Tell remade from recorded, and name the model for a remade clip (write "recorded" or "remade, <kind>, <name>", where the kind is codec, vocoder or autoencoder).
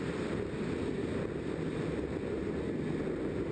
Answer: recorded